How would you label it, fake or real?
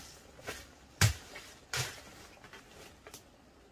real